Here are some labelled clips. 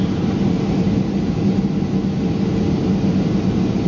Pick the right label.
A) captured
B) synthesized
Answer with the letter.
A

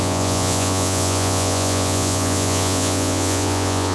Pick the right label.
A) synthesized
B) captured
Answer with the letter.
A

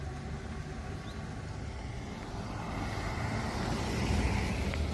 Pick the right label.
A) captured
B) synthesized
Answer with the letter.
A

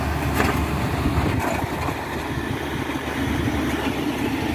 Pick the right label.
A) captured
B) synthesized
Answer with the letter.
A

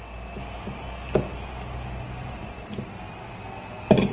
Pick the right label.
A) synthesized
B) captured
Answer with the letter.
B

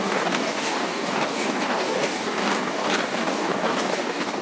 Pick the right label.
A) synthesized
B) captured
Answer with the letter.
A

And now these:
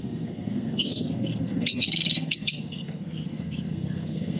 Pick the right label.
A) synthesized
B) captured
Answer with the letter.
A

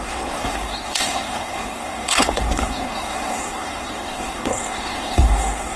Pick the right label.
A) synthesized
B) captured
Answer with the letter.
A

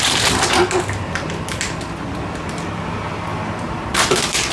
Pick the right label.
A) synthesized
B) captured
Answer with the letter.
A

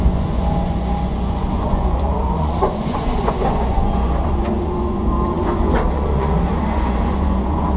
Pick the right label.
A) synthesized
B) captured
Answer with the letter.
A